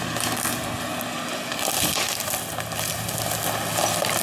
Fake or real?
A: real